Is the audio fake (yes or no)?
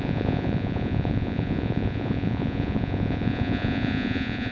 yes